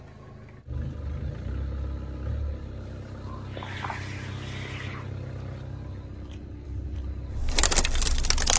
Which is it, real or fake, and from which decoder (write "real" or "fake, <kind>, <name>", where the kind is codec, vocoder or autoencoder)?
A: real